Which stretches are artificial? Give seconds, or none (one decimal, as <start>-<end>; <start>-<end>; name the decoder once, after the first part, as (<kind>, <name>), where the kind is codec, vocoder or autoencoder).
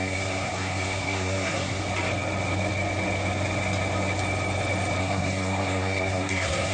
0.0-1.8 (codec, SNAC); 5.0-6.7